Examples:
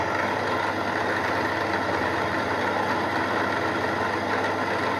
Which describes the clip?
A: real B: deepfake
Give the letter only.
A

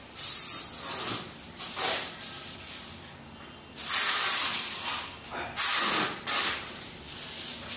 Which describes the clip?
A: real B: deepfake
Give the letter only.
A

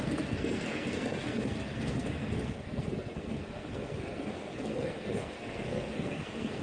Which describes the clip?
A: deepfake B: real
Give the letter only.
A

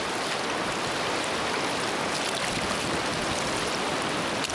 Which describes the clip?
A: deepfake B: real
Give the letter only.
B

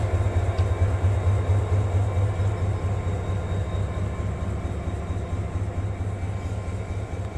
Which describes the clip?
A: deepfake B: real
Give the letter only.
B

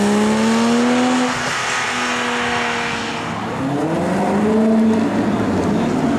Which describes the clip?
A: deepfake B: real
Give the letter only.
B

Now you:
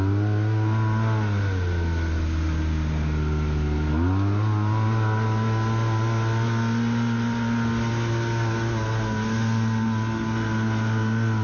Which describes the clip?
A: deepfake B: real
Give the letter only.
B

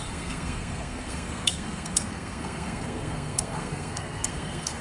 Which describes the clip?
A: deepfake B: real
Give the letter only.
A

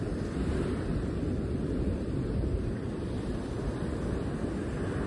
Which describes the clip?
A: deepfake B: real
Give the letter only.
B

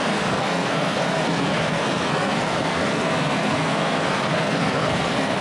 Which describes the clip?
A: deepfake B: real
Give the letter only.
A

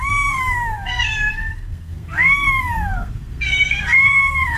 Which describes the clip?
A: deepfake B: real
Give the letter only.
A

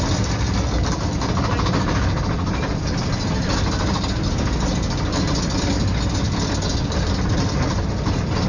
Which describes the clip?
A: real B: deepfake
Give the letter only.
A